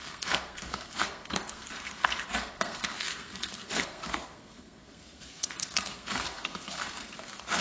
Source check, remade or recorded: remade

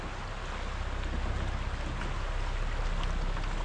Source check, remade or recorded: recorded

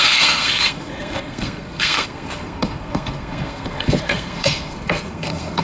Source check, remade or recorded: remade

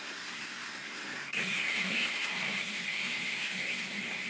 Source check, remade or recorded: remade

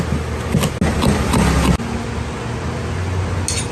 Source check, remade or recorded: recorded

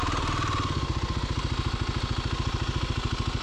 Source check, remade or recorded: recorded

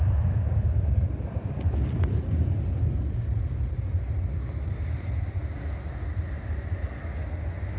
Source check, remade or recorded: recorded